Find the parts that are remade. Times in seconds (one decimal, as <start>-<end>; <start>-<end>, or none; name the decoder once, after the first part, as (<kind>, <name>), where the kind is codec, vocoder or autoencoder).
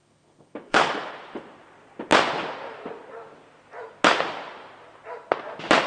0.0-1.1 (autoencoder, DAC-VAE)